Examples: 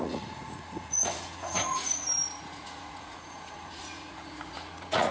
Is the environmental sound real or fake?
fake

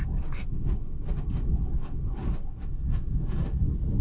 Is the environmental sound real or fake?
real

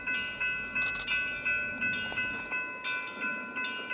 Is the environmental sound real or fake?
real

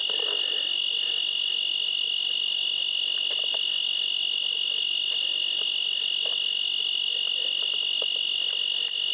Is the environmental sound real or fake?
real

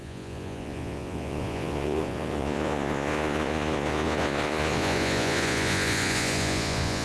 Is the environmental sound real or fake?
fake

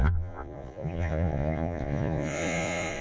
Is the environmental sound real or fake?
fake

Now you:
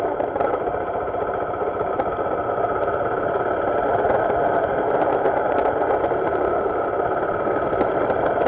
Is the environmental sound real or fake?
real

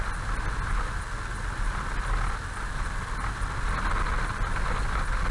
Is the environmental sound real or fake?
real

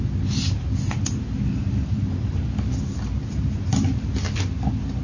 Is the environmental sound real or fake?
real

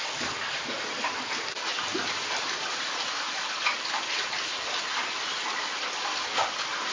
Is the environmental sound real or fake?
real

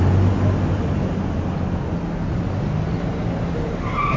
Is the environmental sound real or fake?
real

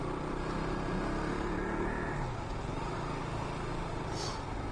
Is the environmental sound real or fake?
real